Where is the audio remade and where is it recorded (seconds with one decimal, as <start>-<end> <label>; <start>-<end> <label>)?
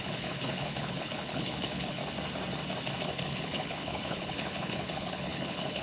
0.0-2.0 remade; 2.0-3.0 recorded; 3.0-5.8 remade